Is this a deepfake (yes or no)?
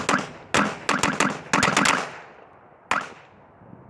no